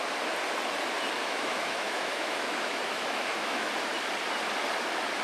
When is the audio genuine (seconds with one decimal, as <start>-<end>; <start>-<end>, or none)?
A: 0.0-1.2; 3.7-5.2